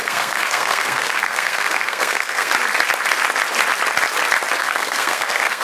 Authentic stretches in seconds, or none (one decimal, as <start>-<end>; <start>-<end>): 2.5-4.6